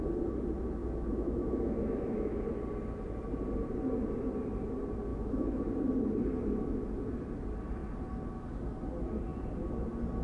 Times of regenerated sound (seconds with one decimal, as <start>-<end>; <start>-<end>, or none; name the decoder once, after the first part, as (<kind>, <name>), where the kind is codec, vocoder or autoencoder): 0.8-2.4 (autoencoder, DAC-VAE); 5.1-5.7